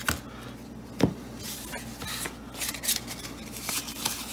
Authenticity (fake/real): real